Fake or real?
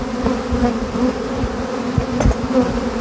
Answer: real